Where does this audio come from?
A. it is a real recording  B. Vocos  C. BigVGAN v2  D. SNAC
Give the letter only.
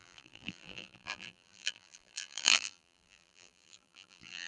C